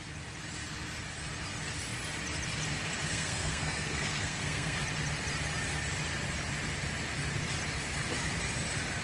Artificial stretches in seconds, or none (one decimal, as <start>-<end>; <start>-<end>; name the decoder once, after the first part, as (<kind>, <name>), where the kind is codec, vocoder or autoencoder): 3.1-4.8 (codec, SNAC)